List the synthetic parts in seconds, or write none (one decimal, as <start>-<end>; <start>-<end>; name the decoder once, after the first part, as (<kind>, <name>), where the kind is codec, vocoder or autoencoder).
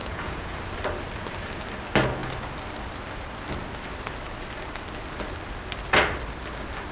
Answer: 0.0-0.6 (vocoder, Vocos)